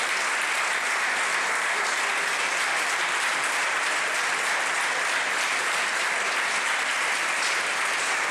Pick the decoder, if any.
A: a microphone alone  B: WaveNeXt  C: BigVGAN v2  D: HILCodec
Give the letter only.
C